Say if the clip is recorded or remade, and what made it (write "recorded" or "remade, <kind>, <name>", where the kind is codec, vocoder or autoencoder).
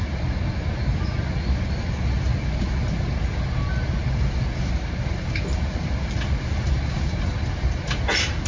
recorded